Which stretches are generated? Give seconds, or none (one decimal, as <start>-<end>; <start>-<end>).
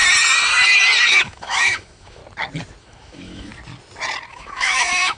1.1-2.2; 2.8-3.5; 4.3-5.2